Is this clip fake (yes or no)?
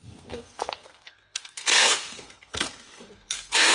yes